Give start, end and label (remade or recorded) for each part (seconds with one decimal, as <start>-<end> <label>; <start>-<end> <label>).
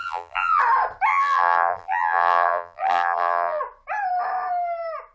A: 0.0-0.6 remade; 0.6-1.1 recorded; 1.1-3.6 remade; 3.6-5.1 recorded